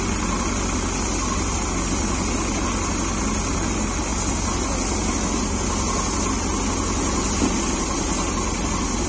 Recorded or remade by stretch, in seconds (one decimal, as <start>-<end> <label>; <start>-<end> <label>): 0.0-9.1 recorded